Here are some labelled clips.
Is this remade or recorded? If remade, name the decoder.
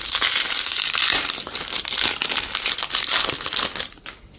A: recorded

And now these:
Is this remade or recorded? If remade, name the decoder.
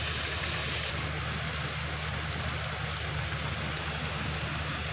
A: recorded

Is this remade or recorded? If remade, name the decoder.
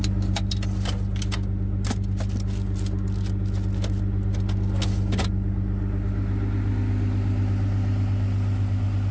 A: recorded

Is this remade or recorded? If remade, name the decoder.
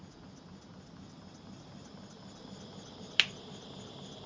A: recorded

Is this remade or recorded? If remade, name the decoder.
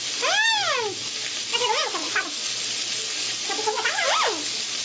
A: recorded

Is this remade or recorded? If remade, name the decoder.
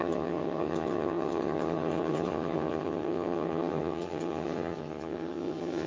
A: remade, vocoder, HiFi-GAN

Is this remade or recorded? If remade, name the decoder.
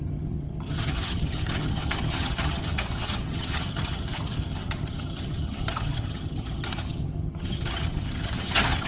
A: remade, vocoder, HiFi-GAN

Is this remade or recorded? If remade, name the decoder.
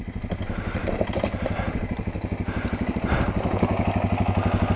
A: recorded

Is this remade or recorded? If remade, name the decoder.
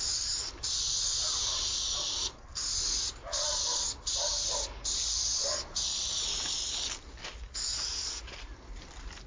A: recorded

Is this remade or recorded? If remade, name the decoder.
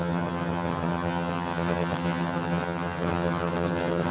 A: remade, vocoder, HiFi-GAN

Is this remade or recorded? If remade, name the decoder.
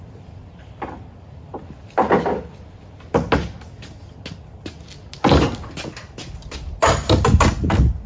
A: recorded